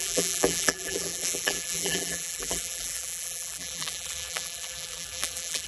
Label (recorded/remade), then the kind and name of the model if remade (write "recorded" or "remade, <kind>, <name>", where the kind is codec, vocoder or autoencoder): remade, vocoder, BigVGAN v2